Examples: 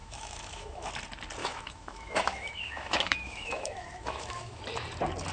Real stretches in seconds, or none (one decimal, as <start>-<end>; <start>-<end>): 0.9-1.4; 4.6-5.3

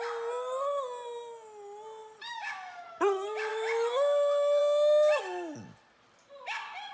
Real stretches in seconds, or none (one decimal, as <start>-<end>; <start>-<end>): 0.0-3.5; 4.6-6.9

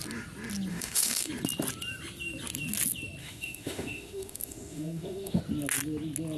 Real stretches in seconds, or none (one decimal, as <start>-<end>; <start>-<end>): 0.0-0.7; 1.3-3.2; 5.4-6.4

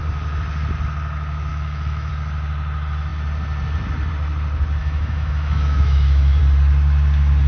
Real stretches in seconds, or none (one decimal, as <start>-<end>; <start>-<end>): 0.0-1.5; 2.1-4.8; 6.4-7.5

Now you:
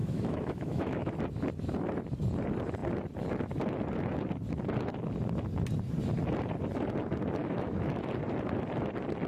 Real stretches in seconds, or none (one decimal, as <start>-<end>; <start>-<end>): 1.1-7.4; 8.0-9.3